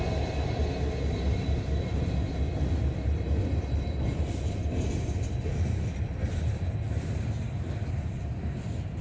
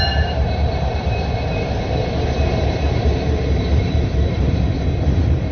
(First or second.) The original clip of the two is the first